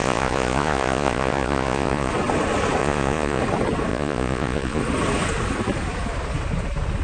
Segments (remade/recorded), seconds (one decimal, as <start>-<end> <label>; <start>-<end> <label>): 0.0-2.1 remade; 2.1-2.8 recorded; 2.8-3.4 remade; 3.4-3.9 recorded; 3.9-4.8 remade; 4.8-7.0 recorded